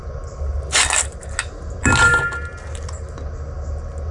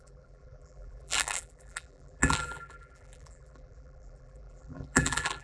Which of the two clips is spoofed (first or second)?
second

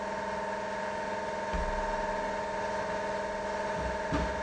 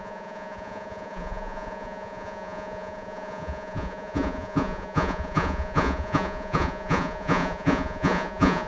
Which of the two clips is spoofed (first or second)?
second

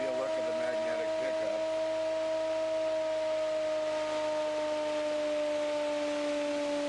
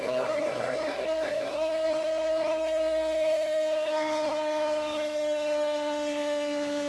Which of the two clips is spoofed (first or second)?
second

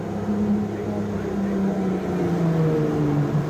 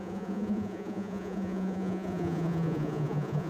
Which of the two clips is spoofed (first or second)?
second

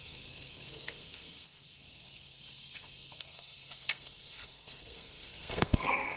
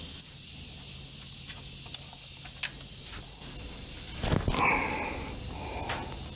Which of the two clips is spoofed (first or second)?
first